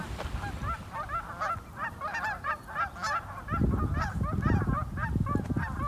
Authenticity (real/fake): real